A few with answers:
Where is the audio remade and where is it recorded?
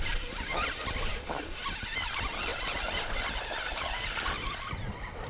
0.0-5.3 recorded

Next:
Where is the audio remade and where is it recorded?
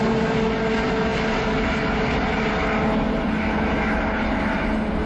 0.0-5.1 recorded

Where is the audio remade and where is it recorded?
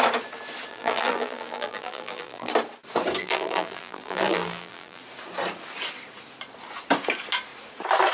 0.0-0.7 recorded; 0.7-2.5 remade; 2.5-3.2 recorded; 3.2-5.0 remade; 5.0-8.1 recorded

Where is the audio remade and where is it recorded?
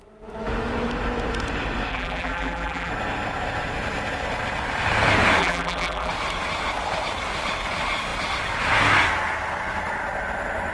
0.0-1.9 recorded; 1.9-2.9 remade; 2.9-5.4 recorded; 5.4-6.1 remade; 6.1-10.7 recorded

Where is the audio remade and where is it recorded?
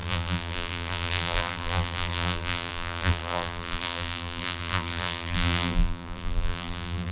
0.0-7.1 remade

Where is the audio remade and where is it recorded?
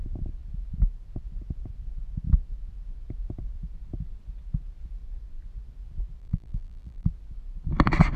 0.0-6.2 recorded; 6.2-7.1 remade; 7.1-8.2 recorded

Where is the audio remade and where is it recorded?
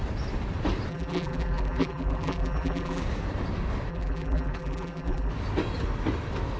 0.0-0.9 recorded; 0.9-3.0 remade; 3.0-3.9 recorded; 3.9-5.3 remade; 5.3-6.6 recorded